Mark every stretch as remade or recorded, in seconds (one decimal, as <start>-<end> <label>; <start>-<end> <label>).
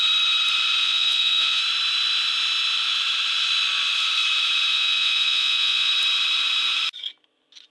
0.0-0.8 recorded; 0.8-1.6 remade; 1.6-4.7 recorded; 4.7-5.9 remade; 5.9-7.7 recorded